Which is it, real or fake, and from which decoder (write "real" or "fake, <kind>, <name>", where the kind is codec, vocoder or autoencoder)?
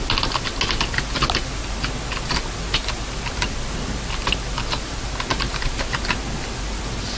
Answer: real